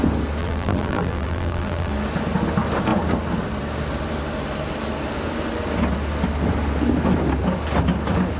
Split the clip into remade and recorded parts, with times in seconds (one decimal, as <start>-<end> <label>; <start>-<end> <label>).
0.0-0.4 recorded; 0.4-1.9 remade; 1.9-8.4 recorded